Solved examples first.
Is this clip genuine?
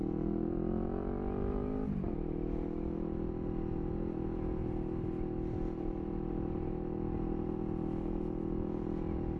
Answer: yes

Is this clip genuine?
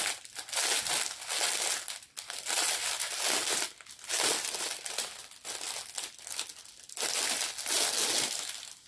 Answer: yes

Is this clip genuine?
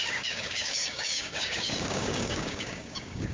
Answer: no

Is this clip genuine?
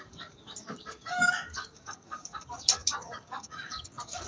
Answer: no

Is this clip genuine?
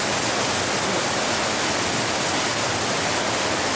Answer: yes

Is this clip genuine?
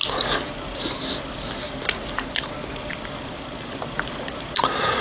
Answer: yes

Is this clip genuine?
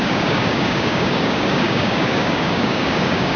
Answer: no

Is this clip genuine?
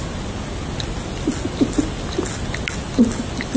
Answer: yes